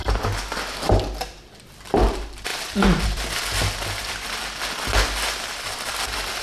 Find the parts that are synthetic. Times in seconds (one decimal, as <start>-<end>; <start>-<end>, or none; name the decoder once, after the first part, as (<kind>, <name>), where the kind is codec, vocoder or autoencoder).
none